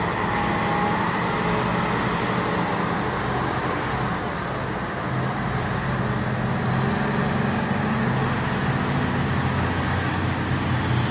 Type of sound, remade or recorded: recorded